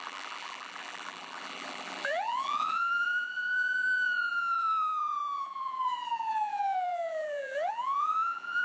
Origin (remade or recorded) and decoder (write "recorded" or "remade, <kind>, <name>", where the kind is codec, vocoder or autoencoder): remade, vocoder, BigVGAN v2